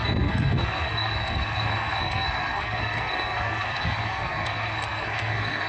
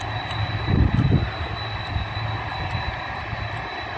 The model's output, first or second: first